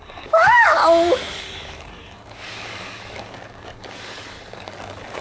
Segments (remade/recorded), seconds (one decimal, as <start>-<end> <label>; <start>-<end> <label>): 0.0-0.8 remade; 0.8-1.3 recorded; 1.3-5.2 remade